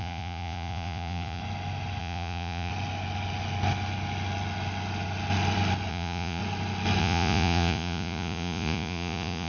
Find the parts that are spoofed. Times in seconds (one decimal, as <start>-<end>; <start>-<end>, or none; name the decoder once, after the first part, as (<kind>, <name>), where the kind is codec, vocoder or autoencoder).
0.0-1.4 (vocoder, Vocos); 2.0-2.7; 5.9-6.4; 7.0-9.5